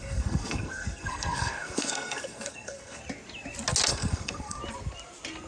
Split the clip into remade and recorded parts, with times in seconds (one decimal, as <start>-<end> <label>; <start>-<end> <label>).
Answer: 0.0-3.0 remade; 3.0-3.9 recorded; 3.9-4.6 remade; 4.6-5.5 recorded